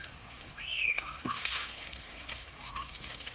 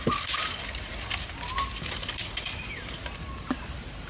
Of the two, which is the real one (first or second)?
second